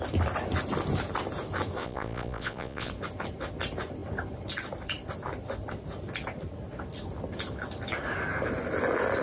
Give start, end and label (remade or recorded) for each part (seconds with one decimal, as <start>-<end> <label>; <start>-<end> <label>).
0.0-1.8 recorded; 1.8-2.9 remade; 2.9-9.2 recorded